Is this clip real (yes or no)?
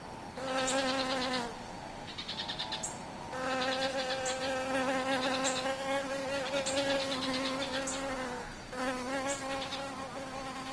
yes